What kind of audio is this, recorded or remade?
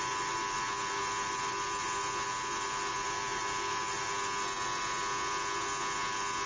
recorded